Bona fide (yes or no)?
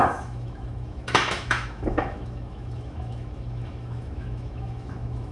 no